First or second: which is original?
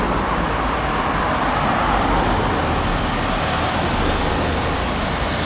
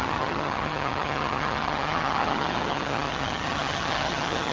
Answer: first